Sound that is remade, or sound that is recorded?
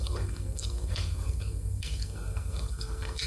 remade